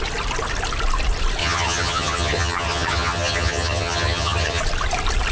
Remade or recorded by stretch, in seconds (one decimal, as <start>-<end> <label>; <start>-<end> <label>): 0.0-1.4 recorded; 1.4-4.6 remade; 4.6-5.3 recorded